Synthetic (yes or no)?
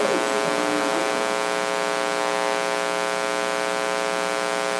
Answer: no